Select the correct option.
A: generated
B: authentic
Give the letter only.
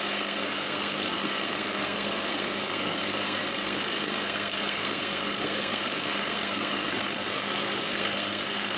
A